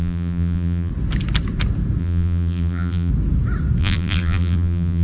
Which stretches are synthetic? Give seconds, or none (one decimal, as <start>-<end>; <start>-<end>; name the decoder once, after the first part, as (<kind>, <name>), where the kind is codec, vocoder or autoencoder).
0.0-0.9 (vocoder, BigVGAN v2); 2.0-3.1; 3.8-5.0